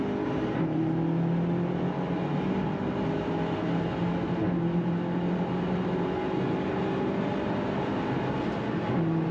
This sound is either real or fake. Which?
real